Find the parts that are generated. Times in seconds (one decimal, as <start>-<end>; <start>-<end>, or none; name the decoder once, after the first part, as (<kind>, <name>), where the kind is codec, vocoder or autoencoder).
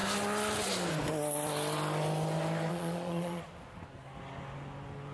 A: 2.7-3.4 (vocoder, Vocos)